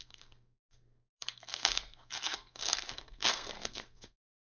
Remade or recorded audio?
remade